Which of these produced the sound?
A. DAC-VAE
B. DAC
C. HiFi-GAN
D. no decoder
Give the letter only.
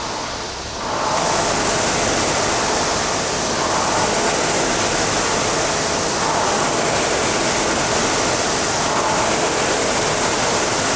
D